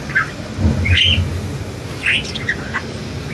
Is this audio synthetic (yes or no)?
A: no